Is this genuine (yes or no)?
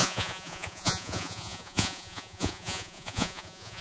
no